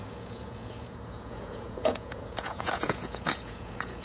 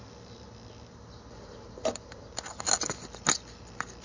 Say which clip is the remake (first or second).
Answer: first